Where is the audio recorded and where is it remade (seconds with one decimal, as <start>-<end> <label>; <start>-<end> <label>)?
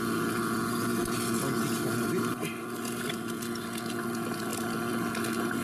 0.0-5.6 recorded